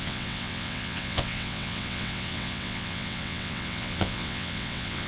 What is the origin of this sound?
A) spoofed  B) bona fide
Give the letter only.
A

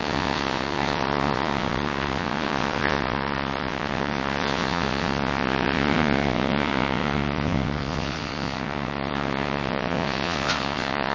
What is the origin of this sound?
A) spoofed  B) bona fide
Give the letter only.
A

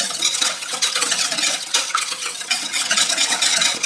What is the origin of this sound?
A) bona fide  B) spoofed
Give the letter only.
B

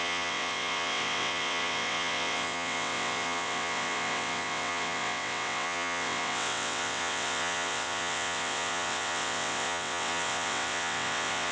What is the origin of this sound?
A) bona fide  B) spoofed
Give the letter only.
B